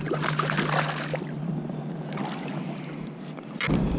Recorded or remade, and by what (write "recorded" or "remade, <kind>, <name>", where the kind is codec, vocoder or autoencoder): recorded